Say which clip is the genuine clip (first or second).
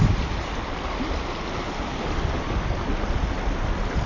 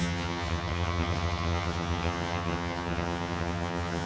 first